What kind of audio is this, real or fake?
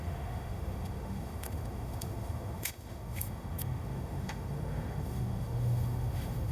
fake